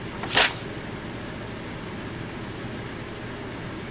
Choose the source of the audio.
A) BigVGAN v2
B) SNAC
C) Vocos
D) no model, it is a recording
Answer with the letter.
D